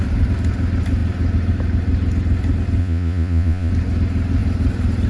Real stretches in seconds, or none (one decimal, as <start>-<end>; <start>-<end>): 0.0-2.8; 3.7-5.1